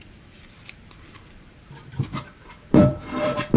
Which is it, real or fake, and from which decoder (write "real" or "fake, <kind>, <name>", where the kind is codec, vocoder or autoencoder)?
fake, vocoder, BigVGAN v2